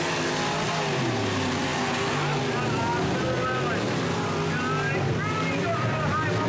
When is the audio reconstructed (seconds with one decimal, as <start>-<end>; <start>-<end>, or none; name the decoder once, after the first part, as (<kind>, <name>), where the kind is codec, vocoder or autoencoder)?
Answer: none